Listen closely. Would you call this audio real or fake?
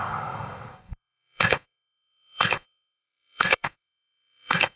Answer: fake